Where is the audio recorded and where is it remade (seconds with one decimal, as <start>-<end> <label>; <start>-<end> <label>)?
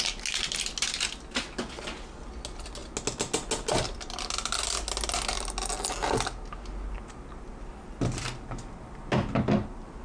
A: 0.0-10.0 recorded